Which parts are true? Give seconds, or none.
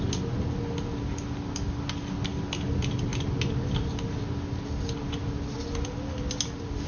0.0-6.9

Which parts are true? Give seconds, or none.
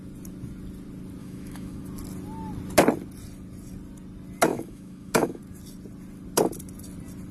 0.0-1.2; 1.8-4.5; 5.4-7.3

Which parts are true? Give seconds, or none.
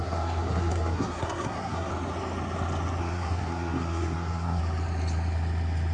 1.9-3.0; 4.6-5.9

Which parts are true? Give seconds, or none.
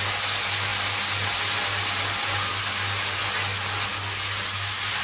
0.0-5.0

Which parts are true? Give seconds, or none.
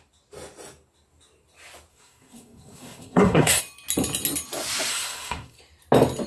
0.0-1.9; 3.6-4.9; 5.6-6.3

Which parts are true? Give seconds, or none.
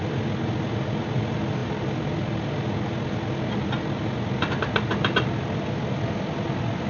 0.0-6.9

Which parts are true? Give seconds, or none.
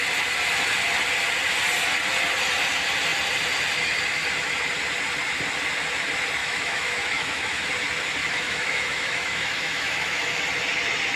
0.0-6.4; 7.7-8.2; 10.4-11.2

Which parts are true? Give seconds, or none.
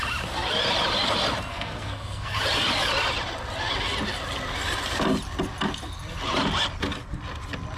0.0-1.5; 2.4-7.8